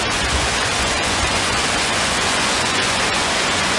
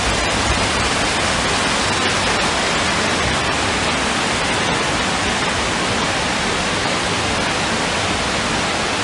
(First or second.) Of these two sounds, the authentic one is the second